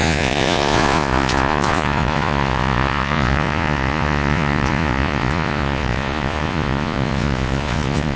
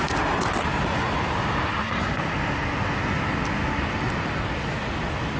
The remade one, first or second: first